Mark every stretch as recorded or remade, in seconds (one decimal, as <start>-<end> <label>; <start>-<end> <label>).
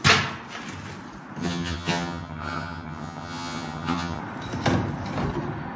0.0-1.4 recorded; 1.4-4.2 remade; 4.2-5.8 recorded